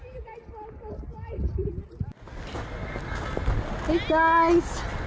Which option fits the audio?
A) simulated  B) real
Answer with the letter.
B